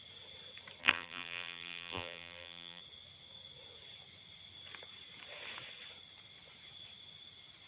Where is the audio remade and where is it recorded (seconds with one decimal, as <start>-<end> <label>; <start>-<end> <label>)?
0.0-0.8 recorded; 0.8-2.8 remade; 2.8-7.7 recorded